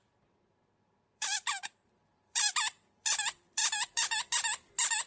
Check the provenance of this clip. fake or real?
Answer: fake